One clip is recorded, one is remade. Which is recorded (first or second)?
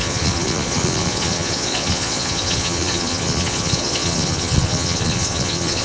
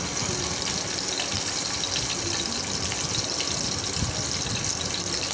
second